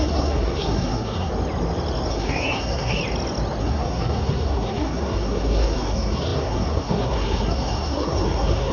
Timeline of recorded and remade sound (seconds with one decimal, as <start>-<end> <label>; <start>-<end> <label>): 0.0-1.3 remade; 1.3-2.1 recorded; 2.1-3.0 remade; 3.0-3.6 recorded; 3.6-8.7 remade